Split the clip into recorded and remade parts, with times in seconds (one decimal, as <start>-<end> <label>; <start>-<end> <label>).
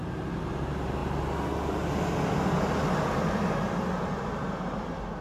0.0-5.2 recorded